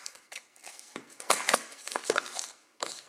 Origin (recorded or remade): remade